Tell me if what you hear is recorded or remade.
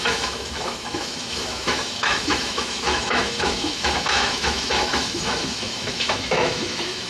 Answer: remade